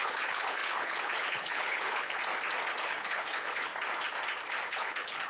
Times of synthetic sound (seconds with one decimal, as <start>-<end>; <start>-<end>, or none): 0.0-2.2; 2.8-3.7; 4.7-5.3